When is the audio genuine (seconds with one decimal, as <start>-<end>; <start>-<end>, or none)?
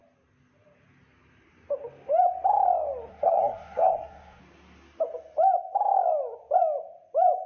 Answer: 0.0-3.1; 4.4-7.5